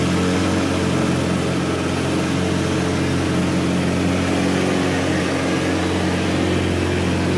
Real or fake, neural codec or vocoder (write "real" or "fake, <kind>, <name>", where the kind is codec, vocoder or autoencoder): real